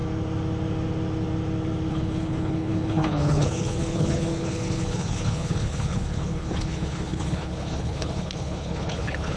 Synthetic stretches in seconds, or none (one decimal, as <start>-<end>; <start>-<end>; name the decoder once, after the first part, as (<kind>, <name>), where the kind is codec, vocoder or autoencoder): 1.9-9.4 (codec, HILCodec)